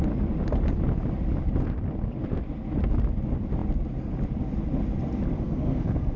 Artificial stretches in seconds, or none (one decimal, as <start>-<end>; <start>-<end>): 5.3-6.2